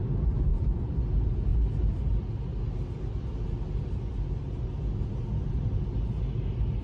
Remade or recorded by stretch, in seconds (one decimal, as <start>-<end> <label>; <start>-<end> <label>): 0.0-0.5 recorded; 0.5-1.0 remade; 1.0-6.8 recorded